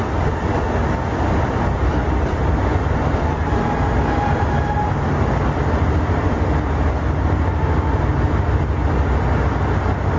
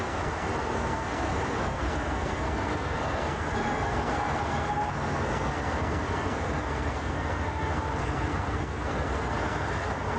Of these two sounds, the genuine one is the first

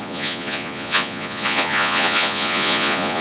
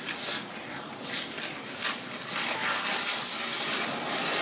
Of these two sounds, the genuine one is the second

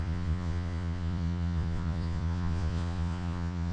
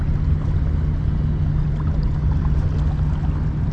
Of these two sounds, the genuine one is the second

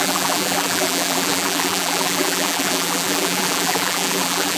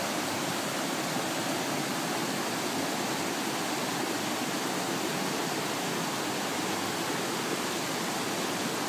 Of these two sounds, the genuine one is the second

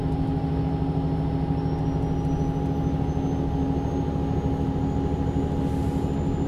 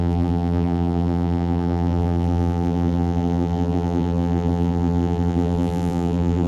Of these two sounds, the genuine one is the first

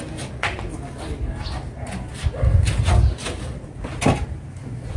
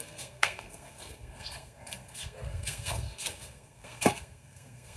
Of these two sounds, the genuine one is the first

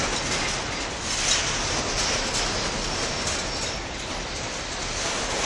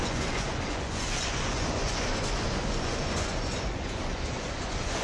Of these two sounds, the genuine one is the first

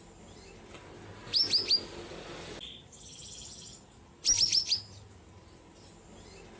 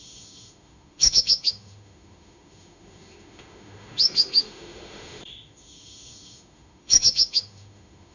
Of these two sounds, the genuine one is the first